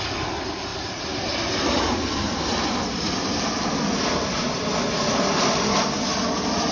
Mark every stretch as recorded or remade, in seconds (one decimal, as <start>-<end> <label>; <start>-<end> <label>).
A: 0.0-6.7 recorded